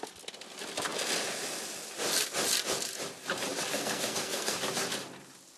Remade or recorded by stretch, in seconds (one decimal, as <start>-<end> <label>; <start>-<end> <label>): 0.0-3.7 recorded; 3.7-4.6 remade; 4.6-5.6 recorded